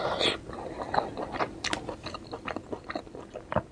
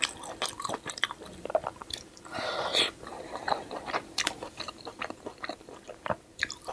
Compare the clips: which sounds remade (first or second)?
second